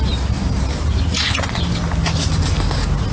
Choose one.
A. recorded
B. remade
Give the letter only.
A